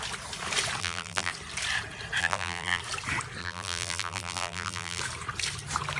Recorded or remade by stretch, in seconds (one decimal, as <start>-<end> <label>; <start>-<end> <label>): 0.0-0.8 recorded; 0.8-1.3 remade; 1.3-2.2 recorded; 2.2-2.8 remade; 2.8-3.4 recorded; 3.4-5.0 remade; 5.0-6.0 recorded

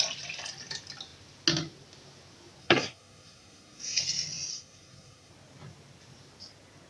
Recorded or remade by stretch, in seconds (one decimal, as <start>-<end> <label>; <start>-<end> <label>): 0.0-2.6 recorded; 2.6-4.0 remade; 4.0-4.5 recorded; 4.5-5.3 remade; 5.3-6.9 recorded

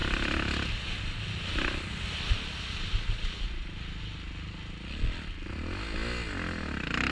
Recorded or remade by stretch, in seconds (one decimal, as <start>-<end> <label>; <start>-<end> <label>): 0.0-7.1 recorded

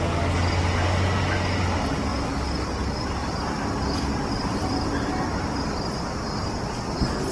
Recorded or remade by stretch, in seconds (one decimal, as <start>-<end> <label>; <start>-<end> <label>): 0.0-7.3 recorded